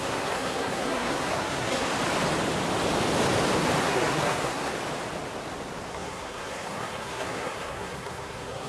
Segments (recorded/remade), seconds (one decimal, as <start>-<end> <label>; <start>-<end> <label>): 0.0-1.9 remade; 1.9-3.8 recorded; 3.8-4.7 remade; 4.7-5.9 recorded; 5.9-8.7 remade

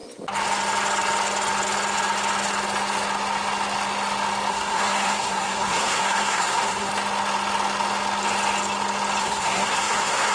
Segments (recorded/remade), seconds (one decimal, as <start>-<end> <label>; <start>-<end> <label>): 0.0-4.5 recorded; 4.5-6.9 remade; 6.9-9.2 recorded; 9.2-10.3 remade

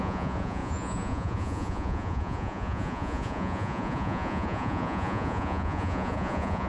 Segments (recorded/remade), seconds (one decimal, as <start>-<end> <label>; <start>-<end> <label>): 0.0-6.7 remade

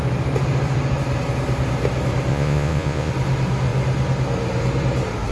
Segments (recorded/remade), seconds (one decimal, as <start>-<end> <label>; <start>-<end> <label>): 0.0-2.3 recorded; 2.3-3.1 remade; 3.1-5.3 recorded

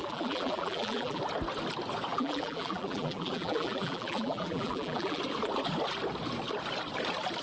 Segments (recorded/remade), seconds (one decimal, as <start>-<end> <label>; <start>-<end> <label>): 0.0-1.2 remade; 1.2-2.1 recorded; 2.1-5.2 remade; 5.2-7.4 recorded